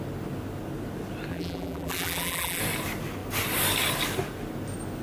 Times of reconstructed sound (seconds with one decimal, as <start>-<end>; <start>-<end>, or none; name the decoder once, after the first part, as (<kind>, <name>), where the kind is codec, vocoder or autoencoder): 1.3-2.6 (vocoder, BigVGAN v2)